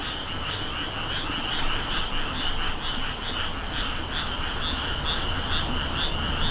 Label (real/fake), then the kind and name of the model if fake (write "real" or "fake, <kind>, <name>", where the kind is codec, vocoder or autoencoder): real